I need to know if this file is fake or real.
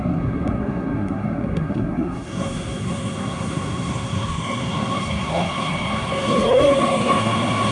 fake